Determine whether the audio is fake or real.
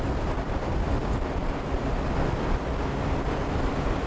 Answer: real